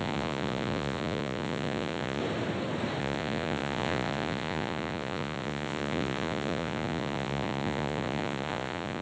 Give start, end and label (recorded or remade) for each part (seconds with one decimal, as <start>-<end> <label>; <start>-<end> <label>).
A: 0.0-2.2 remade; 2.2-3.0 recorded; 3.0-9.0 remade